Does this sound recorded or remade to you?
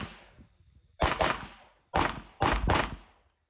recorded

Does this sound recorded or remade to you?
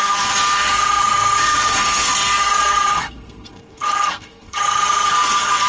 remade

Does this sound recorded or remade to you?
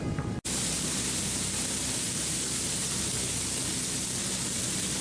recorded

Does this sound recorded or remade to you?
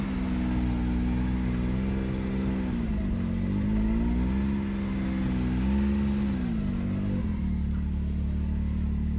recorded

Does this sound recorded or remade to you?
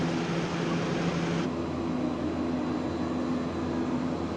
recorded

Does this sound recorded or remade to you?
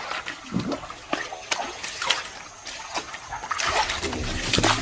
recorded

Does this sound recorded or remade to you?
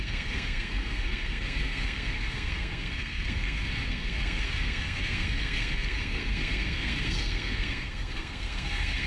remade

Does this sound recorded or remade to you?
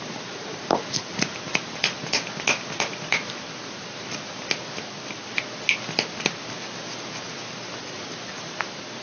recorded